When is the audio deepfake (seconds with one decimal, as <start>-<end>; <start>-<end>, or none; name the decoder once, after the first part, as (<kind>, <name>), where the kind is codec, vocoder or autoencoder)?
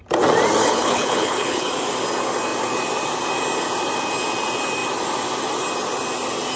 0.6-1.7 (codec, HILCodec)